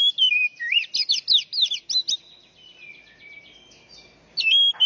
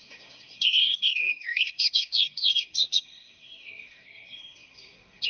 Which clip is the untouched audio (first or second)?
first